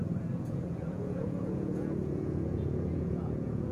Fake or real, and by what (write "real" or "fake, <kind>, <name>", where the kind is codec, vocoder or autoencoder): fake, vocoder, Vocos